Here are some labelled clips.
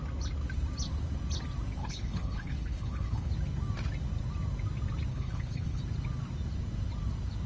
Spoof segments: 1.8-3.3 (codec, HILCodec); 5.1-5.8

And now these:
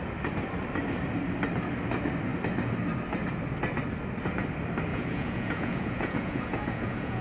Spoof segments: 4.9-7.2 (vocoder, Vocos)

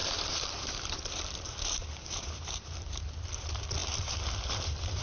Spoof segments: 0.0-3.0 (vocoder, BigVGAN v2); 3.8-5.0

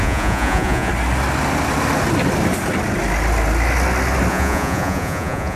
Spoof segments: 0.0-0.9 (vocoder, Vocos); 4.3-5.6

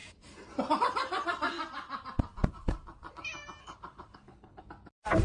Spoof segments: 3.6-4.6 (codec, HILCodec)

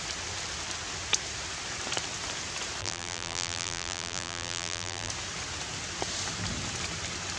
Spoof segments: 2.8-5.1 (vocoder, BigVGAN v2)